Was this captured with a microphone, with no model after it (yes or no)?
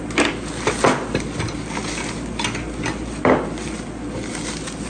yes